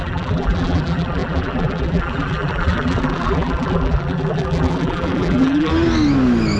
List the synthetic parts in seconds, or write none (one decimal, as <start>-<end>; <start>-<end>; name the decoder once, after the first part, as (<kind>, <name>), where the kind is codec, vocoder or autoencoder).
0.0-5.7 (vocoder, BigVGAN v2)